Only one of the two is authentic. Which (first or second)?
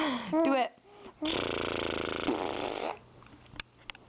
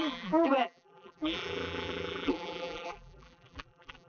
first